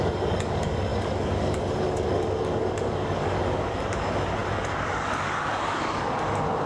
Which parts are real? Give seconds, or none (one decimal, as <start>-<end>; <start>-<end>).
none